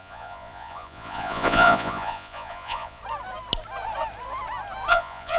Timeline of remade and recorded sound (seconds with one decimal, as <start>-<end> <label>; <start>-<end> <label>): 0.0-3.0 remade; 3.0-4.9 recorded; 4.9-5.4 remade